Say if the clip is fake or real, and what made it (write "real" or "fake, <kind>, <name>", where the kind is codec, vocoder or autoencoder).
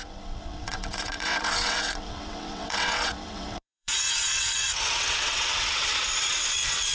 fake, vocoder, WaveNeXt